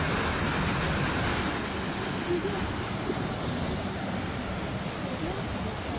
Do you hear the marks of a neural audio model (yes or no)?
no